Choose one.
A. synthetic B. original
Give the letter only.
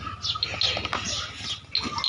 B